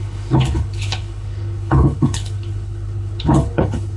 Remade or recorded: remade